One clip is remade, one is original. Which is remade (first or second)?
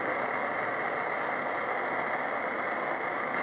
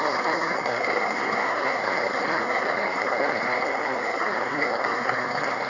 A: second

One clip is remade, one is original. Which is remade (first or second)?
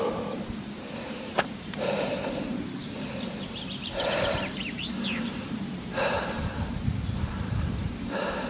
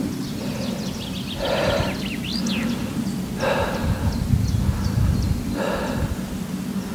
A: first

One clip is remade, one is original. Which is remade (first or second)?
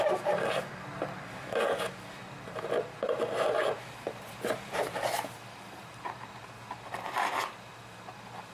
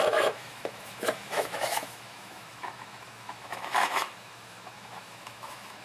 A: second